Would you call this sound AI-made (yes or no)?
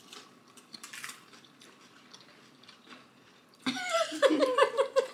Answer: yes